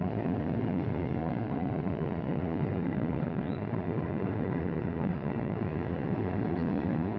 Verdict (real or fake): fake